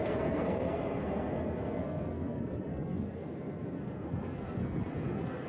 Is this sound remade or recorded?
remade